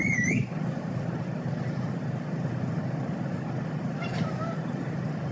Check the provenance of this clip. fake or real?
real